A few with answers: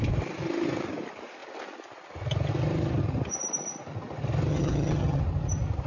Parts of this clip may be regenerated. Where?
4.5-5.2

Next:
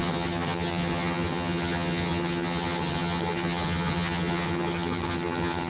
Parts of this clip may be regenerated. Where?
0.0-5.7

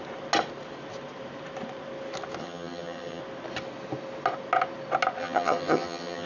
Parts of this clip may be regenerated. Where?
2.4-3.2; 5.2-6.3

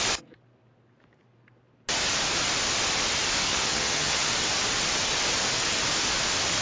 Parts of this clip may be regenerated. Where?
3.5-4.3

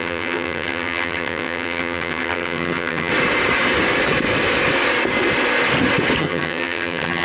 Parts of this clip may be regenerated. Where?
0.0-3.1; 6.2-7.2

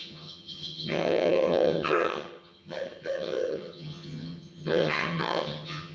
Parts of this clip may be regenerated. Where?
0.0-5.9

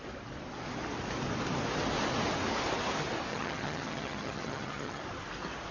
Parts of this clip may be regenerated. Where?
3.3-5.0